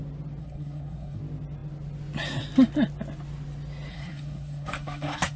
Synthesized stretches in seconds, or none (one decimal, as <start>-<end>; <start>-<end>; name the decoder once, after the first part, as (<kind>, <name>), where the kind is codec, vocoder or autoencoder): 0.4-1.2 (codec, SNAC); 3.9-5.4